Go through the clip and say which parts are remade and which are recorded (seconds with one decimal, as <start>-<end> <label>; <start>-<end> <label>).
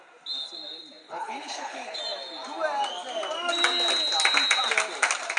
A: 0.0-1.0 recorded; 1.0-2.0 remade; 2.0-5.4 recorded